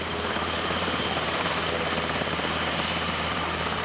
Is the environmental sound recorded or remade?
remade